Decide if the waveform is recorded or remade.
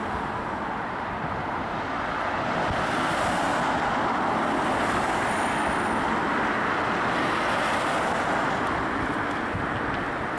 recorded